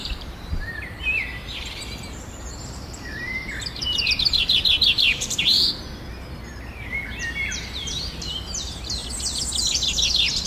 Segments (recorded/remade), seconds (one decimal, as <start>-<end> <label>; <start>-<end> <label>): 0.0-5.6 remade; 5.6-6.9 recorded; 6.9-9.0 remade; 9.0-9.6 recorded; 9.6-10.5 remade

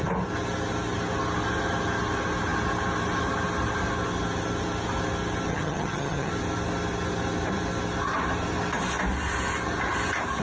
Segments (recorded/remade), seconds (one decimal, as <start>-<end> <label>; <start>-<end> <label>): 0.0-5.5 recorded; 5.5-6.3 remade; 6.3-10.4 recorded

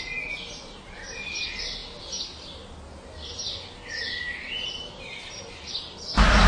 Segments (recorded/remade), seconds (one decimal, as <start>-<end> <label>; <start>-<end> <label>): 0.0-6.5 recorded

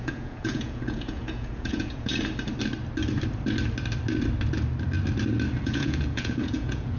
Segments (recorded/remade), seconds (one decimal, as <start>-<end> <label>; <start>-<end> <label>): 0.0-2.1 remade; 2.1-5.6 recorded; 5.6-7.0 remade

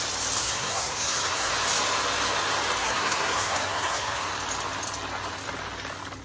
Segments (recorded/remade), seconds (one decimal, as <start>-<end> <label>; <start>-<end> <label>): 0.0-0.4 recorded; 0.4-1.5 remade; 1.5-2.8 recorded; 2.8-4.3 remade; 4.3-6.2 recorded

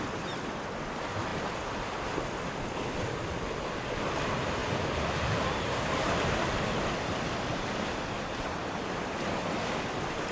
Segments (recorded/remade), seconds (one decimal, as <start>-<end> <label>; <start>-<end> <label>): 0.0-4.6 remade; 4.6-5.4 recorded; 5.4-10.3 remade

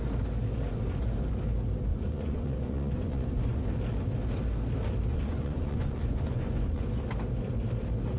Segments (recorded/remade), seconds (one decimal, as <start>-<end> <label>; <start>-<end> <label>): 0.0-1.9 recorded; 1.9-3.6 remade; 3.6-5.1 recorded; 5.1-6.8 remade; 6.8-8.2 recorded